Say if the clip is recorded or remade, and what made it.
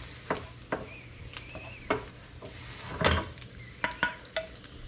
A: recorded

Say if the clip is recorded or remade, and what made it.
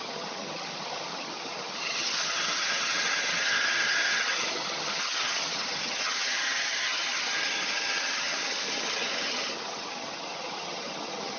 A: remade, vocoder, HiFi-GAN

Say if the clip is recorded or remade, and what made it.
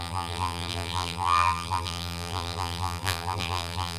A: remade, vocoder, BigVGAN v2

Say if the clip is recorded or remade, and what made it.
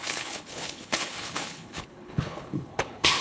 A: remade, codec, HILCodec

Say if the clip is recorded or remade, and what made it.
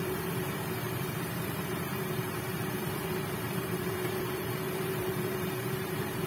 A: remade, vocoder, BigVGAN v2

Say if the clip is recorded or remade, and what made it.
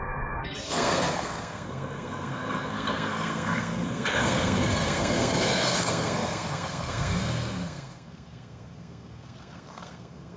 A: remade, codec, SNAC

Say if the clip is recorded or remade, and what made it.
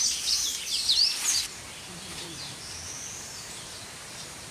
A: remade, vocoder, BigVGAN v2